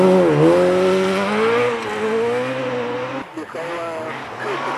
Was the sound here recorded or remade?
recorded